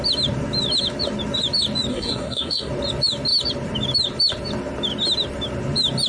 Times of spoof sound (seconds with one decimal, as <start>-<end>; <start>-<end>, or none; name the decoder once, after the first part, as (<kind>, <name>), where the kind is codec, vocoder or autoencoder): 1.9-2.7 (codec, SNAC)